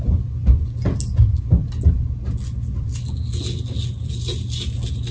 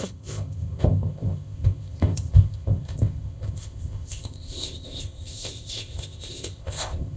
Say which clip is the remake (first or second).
second